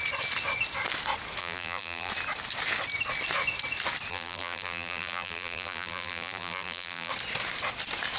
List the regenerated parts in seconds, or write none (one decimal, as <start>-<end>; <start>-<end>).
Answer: 1.4-2.1; 4.1-7.1